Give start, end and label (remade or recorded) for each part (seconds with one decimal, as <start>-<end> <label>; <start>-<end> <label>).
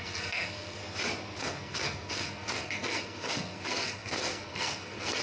0.0-0.8 remade; 0.8-1.4 recorded; 1.4-5.2 remade